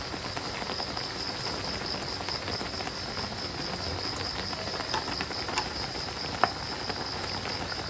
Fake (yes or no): no